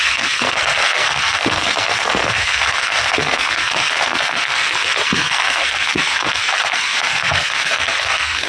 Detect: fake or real fake